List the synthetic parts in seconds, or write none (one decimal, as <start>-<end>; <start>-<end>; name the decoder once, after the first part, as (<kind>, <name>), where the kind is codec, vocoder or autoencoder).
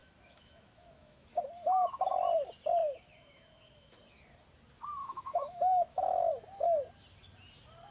0.0-1.4 (autoencoder, DAC-VAE); 2.8-4.0; 5.0-6.3